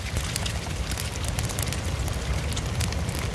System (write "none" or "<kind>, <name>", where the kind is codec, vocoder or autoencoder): none